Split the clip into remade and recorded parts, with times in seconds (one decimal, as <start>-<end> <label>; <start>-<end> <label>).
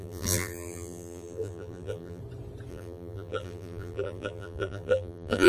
0.0-2.2 remade; 2.2-2.7 recorded; 2.7-5.5 remade